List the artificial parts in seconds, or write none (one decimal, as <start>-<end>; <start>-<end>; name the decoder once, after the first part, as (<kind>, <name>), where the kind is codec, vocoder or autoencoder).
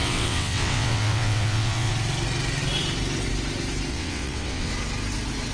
0.0-1.9 (vocoder, WaveNeXt); 3.9-4.7